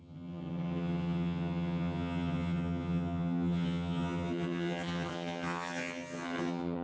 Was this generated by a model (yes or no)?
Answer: yes